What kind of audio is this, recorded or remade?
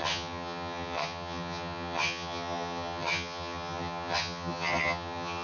remade